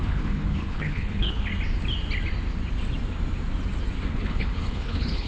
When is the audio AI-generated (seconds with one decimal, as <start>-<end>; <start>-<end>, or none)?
0.0-1.5; 4.1-5.3